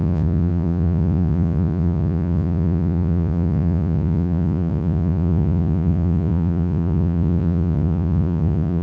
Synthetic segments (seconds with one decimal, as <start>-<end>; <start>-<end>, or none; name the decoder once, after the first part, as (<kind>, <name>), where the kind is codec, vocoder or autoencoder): 0.0-8.8 (vocoder, Vocos)